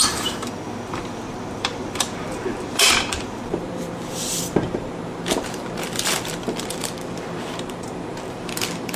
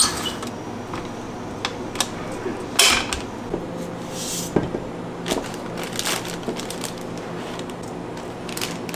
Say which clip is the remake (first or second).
first